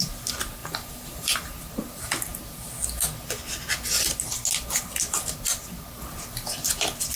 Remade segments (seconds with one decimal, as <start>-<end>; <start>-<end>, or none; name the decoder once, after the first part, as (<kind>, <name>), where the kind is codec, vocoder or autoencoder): 0.6-1.7 (vocoder, BigVGAN v2)